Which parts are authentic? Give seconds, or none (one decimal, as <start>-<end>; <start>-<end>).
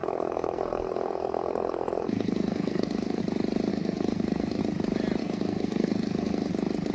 3.2-3.7; 4.6-5.2; 6.5-6.9